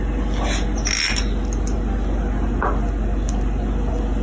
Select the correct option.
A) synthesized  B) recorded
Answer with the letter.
B